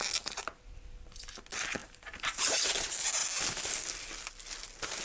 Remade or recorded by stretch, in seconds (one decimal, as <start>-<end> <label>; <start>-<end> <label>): 0.0-1.8 recorded; 1.8-2.7 remade; 2.7-5.0 recorded